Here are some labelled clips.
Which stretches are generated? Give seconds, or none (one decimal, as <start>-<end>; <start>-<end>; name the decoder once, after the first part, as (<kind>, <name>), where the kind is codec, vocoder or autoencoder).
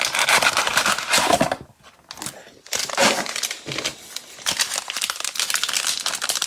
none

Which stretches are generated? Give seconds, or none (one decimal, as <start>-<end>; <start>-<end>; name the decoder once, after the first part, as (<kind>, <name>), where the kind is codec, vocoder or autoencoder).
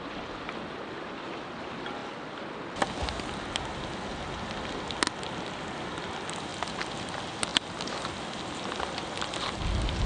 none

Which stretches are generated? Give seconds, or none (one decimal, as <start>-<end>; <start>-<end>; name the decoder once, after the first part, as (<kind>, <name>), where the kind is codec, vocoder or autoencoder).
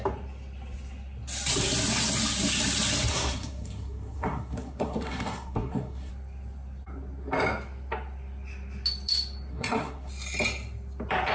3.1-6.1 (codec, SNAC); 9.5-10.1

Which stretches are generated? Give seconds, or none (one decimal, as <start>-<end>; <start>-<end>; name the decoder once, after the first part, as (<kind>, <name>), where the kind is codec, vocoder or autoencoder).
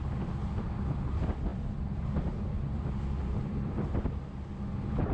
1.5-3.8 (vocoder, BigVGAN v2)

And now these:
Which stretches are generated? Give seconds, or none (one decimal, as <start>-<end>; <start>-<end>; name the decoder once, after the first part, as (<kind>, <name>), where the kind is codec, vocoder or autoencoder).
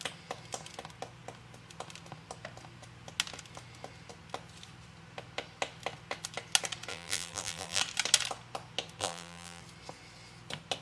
6.9-7.8 (vocoder, BigVGAN v2); 9.0-9.6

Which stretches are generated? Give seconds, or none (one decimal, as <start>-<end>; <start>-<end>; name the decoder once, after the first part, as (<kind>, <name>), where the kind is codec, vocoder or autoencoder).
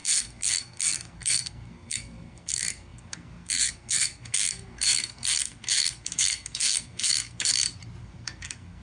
0.0-7.5 (codec, SNAC); 8.0-8.8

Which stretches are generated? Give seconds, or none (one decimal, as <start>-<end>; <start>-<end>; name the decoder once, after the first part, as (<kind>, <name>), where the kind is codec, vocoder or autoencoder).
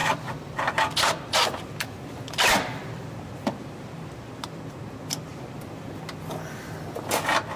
0.0-4.6 (vocoder, BigVGAN v2); 5.3-6.0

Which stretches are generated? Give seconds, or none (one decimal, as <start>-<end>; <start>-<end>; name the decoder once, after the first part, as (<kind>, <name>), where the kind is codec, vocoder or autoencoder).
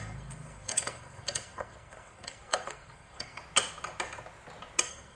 0.0-3.4 (codec, SNAC); 4.8-5.2